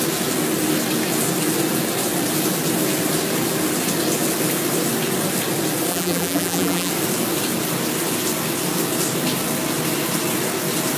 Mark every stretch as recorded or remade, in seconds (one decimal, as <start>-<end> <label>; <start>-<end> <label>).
0.0-5.9 recorded; 5.9-6.9 remade; 6.9-11.0 recorded